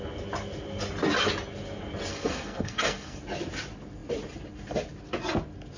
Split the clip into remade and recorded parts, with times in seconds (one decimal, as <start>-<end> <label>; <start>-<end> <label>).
0.0-2.1 recorded; 2.1-3.2 remade; 3.2-5.8 recorded